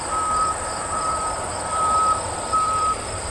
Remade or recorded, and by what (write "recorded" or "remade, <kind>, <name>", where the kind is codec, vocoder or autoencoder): remade, vocoder, BigVGAN v2